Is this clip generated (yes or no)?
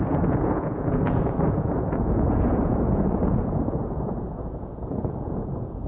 yes